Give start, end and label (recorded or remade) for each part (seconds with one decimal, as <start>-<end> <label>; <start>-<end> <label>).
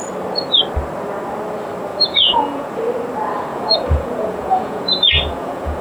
0.0-1.9 recorded; 1.9-2.7 remade; 2.7-3.5 recorded; 3.5-5.8 remade